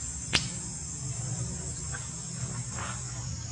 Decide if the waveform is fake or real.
real